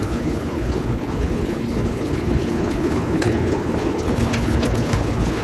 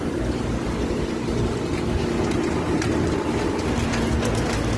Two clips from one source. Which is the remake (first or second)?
first